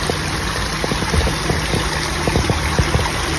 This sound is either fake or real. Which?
real